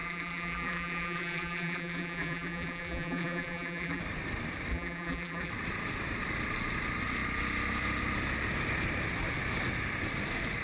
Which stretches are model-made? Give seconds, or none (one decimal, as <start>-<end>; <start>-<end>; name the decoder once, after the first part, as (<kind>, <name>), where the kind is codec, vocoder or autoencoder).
0.0-4.0 (vocoder, BigVGAN v2); 4.7-5.5